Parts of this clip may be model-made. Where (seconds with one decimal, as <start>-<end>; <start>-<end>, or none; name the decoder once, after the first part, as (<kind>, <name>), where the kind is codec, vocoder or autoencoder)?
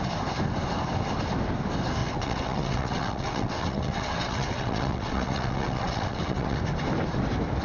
2.0-6.6 (vocoder, WaveNeXt)